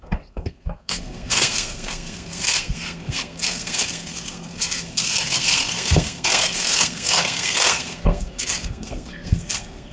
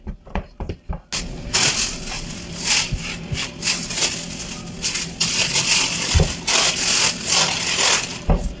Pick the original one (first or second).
second